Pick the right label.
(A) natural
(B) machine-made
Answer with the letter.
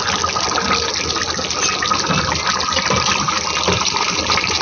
A